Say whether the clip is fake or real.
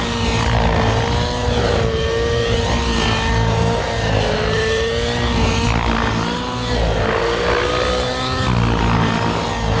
real